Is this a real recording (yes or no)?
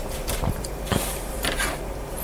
no